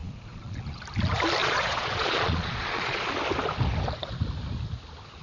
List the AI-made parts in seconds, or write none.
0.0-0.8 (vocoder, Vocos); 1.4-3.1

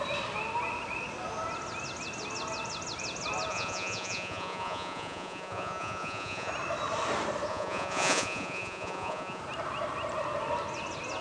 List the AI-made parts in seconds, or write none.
3.5-6.5 (vocoder, Vocos); 7.5-9.4

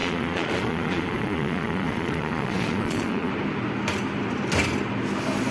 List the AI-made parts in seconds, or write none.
0.0-3.3 (vocoder, Vocos)

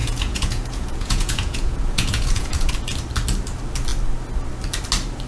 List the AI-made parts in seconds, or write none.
0.0-2.7 (vocoder, Vocos)

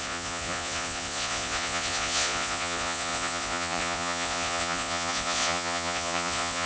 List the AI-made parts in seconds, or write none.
0.0-6.7 (vocoder, Vocos)

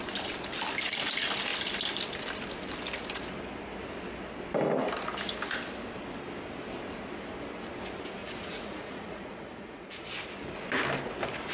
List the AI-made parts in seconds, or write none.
8.2-10.0 (vocoder, Vocos)

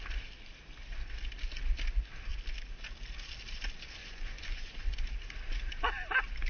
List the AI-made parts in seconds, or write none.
4.0-5.0 (vocoder, Vocos)

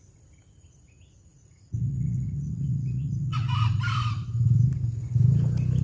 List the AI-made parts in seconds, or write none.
1.3-3.8 (vocoder, Vocos)